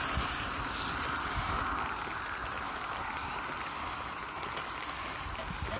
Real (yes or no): yes